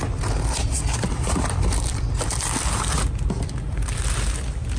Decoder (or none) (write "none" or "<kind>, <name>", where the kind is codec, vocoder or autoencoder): none